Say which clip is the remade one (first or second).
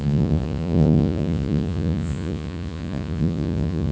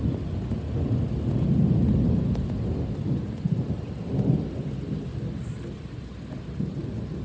first